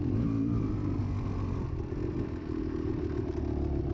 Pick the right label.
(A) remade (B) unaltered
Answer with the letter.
B